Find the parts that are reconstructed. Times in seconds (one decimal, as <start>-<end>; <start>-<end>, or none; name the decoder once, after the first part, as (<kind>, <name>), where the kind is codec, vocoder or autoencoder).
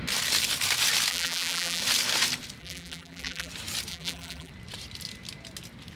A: 1.1-1.8 (vocoder, BigVGAN v2); 2.6-3.5; 3.9-4.5